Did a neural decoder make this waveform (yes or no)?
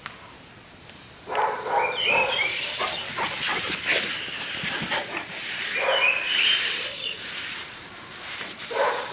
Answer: yes